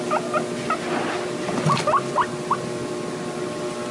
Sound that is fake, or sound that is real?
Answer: real